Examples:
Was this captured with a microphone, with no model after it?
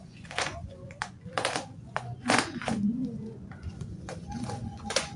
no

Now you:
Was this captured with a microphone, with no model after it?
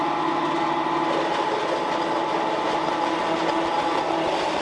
yes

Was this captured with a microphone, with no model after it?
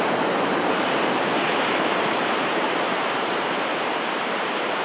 no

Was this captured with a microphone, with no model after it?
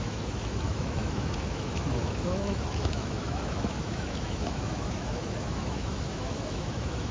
no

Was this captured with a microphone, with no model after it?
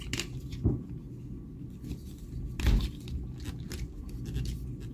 yes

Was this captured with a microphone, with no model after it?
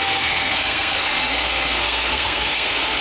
no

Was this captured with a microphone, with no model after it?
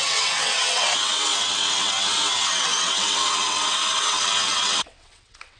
no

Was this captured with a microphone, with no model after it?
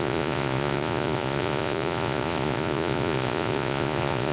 no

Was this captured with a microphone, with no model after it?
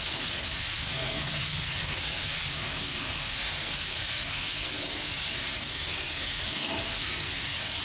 no